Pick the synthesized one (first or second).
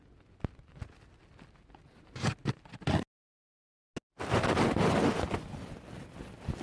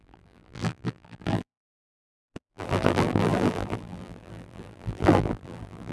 second